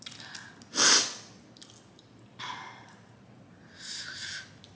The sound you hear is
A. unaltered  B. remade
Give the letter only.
A